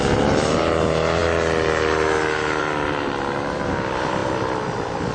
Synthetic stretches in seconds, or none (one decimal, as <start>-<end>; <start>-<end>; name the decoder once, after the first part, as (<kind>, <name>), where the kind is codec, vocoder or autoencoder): none